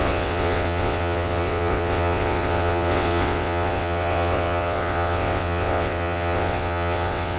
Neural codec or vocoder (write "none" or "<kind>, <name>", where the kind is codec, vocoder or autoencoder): vocoder, WaveNeXt